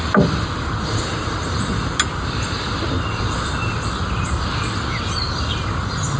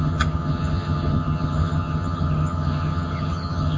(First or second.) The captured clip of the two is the first